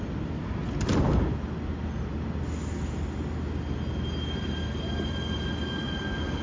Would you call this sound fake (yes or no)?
no